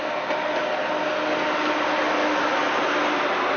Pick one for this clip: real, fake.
real